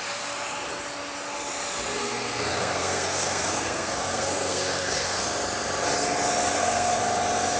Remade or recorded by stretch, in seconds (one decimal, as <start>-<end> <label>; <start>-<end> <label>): 0.0-2.0 recorded; 2.0-5.2 remade; 5.2-6.5 recorded; 6.5-7.0 remade; 7.0-7.6 recorded